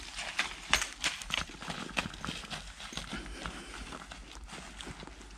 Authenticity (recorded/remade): recorded